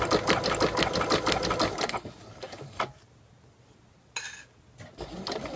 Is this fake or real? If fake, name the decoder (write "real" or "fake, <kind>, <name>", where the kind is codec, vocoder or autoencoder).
real